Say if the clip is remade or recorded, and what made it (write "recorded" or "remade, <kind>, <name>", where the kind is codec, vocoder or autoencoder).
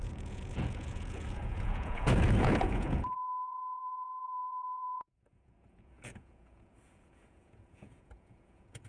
remade, vocoder, Vocos